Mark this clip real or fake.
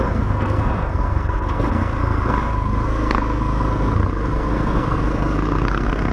fake